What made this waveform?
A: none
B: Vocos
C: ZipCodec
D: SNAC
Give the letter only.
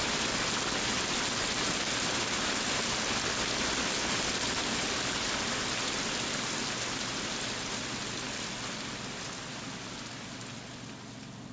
A